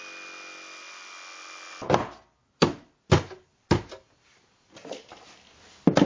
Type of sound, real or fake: real